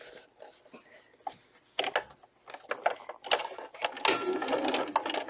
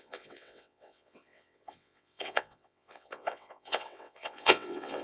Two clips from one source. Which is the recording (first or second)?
first